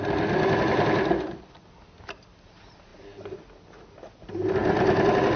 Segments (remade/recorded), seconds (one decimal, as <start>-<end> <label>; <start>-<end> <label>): 0.0-5.4 recorded